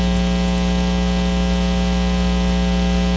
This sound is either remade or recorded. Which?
recorded